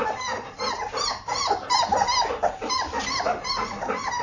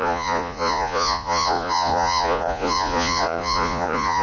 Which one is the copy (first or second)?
second